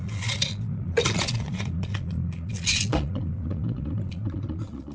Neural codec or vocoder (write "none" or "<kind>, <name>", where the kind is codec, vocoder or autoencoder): vocoder, Vocos